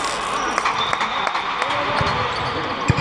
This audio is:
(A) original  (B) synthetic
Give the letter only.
A